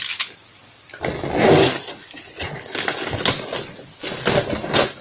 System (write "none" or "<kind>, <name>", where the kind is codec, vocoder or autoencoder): none